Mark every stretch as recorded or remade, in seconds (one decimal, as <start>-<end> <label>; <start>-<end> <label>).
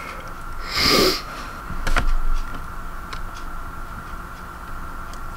0.0-0.8 recorded; 0.8-1.6 remade; 1.6-5.4 recorded